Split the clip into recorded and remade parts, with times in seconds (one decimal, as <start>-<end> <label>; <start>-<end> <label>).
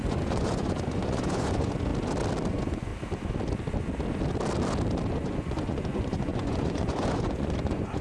0.0-1.9 remade; 1.9-2.5 recorded; 2.5-2.9 remade; 2.9-5.1 recorded; 5.1-8.0 remade